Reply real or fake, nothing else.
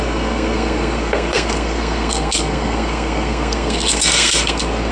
fake